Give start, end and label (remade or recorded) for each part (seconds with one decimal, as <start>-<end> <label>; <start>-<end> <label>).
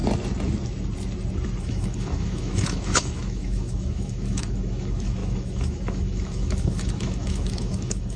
0.0-1.6 recorded; 1.6-8.2 remade